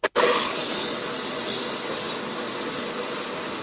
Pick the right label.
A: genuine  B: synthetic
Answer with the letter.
A